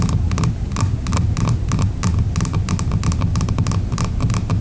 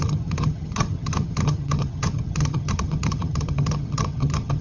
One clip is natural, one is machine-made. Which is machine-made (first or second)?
second